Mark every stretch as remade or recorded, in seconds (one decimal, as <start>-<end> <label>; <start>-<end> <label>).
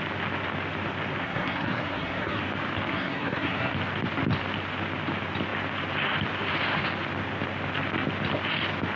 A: 0.0-1.2 recorded; 1.2-2.4 remade; 2.4-2.9 recorded; 2.9-3.7 remade; 3.7-9.0 recorded